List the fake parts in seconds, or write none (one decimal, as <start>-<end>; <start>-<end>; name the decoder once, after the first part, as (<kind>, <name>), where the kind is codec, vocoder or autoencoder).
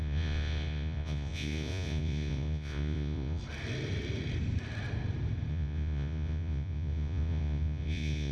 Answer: 0.0-3.4 (vocoder, Vocos); 5.5-8.3